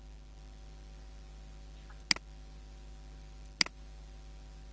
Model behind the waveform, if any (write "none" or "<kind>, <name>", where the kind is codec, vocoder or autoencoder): none